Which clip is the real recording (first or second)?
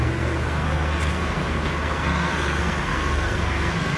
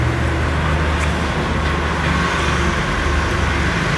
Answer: second